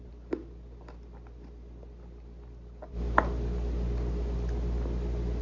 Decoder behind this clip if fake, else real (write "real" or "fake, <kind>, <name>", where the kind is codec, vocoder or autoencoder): real